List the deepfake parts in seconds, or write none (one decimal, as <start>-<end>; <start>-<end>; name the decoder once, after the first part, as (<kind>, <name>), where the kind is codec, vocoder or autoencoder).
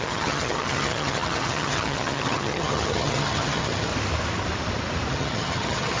0.0-3.9 (vocoder, HiFi-GAN); 5.1-6.0